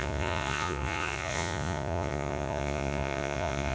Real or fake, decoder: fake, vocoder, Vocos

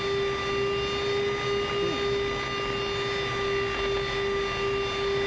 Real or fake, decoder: real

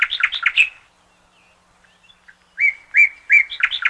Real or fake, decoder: real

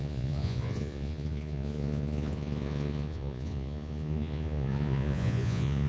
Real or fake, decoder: fake, vocoder, Vocos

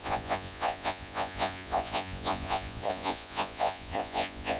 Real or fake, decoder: fake, vocoder, Vocos